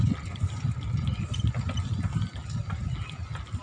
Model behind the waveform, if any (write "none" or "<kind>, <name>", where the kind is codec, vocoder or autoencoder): none